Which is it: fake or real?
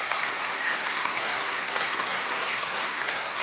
fake